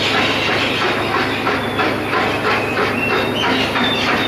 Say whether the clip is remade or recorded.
recorded